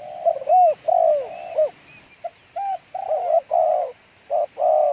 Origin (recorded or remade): recorded